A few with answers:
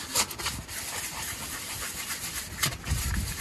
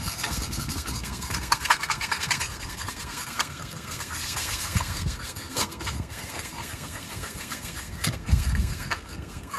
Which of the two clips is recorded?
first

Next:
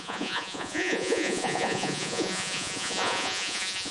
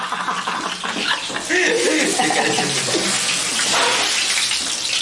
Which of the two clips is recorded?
second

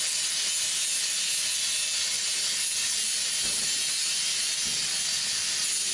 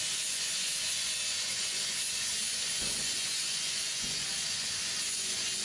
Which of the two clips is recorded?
first